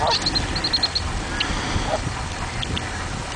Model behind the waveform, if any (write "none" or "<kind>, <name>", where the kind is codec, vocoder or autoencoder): none